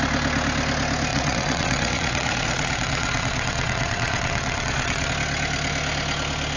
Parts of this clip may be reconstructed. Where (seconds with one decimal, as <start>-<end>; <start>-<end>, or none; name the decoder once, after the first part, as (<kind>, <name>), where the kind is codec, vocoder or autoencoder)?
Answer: 1.1-5.1 (vocoder, WaveNeXt)